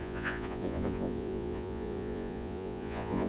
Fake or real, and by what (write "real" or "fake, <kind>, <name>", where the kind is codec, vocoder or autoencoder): fake, vocoder, Vocos